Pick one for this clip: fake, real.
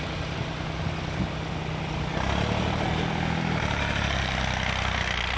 real